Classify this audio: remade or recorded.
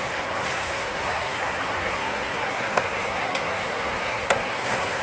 remade